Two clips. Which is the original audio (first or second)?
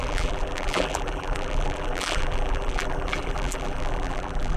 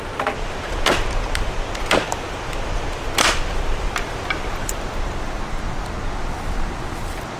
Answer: second